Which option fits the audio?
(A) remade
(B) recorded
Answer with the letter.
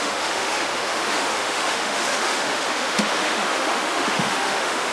A